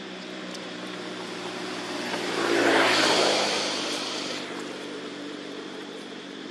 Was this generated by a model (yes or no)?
yes